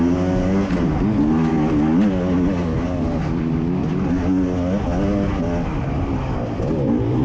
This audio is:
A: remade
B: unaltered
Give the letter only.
B